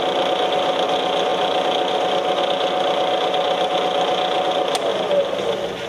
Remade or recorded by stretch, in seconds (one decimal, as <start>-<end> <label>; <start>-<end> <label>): 0.0-4.9 recorded; 4.9-5.5 remade; 5.5-5.9 recorded